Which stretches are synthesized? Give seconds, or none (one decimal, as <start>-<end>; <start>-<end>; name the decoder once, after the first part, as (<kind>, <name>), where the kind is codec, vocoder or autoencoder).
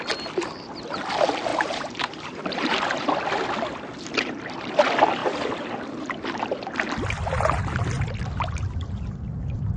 1.5-3.2 (vocoder, BigVGAN v2); 5.2-5.7